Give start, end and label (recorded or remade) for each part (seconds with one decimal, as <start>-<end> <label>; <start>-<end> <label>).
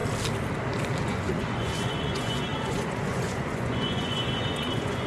0.0-1.0 recorded; 1.0-5.1 remade